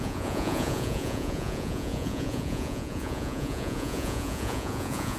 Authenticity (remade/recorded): remade